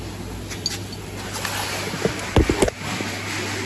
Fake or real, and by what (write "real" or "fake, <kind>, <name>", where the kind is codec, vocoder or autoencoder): real